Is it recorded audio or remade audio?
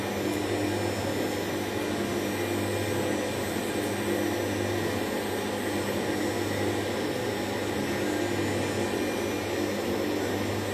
recorded